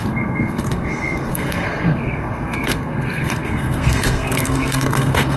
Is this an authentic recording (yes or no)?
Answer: no